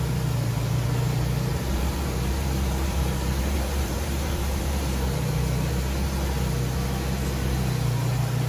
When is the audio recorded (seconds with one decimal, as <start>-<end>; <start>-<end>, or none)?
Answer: 0.0-1.5; 5.7-8.5